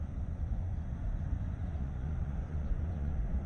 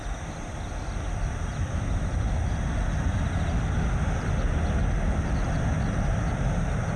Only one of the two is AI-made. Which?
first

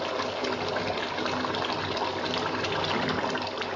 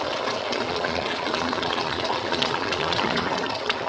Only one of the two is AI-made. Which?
second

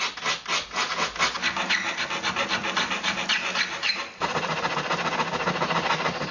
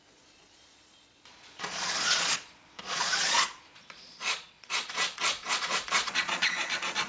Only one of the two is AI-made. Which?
second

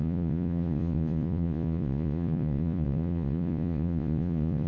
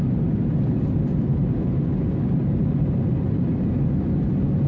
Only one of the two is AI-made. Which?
first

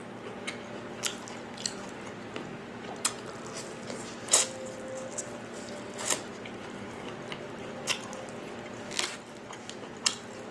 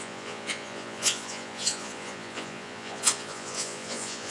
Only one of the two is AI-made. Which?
second